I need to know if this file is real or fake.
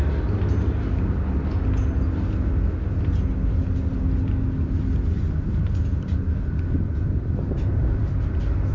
real